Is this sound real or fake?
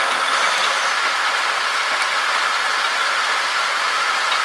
real